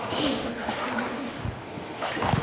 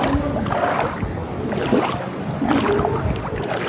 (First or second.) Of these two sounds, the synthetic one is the first